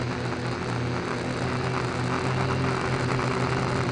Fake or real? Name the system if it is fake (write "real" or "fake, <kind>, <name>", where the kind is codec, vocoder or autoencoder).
real